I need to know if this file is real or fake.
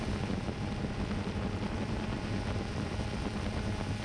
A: fake